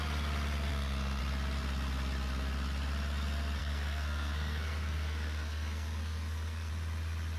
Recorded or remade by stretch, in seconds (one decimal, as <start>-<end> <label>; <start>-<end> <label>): 0.0-0.7 recorded; 0.7-1.2 remade; 1.2-3.6 recorded; 3.6-6.7 remade; 6.7-7.4 recorded

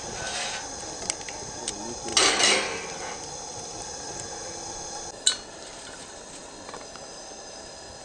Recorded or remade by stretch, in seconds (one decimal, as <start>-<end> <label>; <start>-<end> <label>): 0.0-8.0 recorded